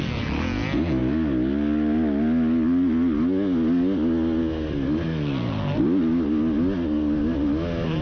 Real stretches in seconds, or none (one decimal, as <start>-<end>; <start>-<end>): 0.0-8.0